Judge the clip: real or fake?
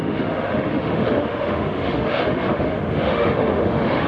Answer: fake